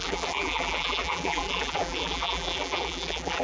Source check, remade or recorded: remade